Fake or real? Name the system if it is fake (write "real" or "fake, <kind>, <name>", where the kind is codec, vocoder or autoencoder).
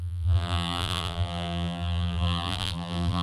fake, vocoder, BigVGAN v2